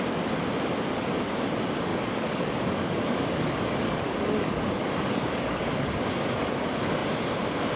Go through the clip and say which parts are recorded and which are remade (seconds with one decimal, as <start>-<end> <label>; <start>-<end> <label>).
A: 0.0-1.9 recorded; 1.9-6.5 remade; 6.5-7.8 recorded